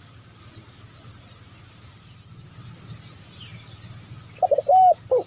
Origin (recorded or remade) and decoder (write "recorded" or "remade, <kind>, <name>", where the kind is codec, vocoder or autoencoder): recorded